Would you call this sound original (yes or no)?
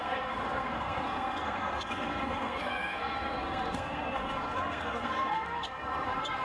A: no